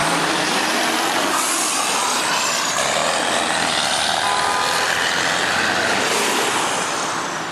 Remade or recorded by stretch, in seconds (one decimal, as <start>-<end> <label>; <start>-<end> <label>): 0.0-2.0 remade; 2.0-7.5 recorded